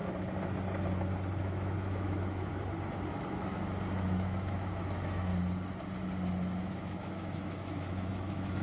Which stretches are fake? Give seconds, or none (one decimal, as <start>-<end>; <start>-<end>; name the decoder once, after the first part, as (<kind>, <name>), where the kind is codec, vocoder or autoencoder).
1.4-2.5 (autoencoder, DAC-VAE); 3.1-5.3; 6.7-8.6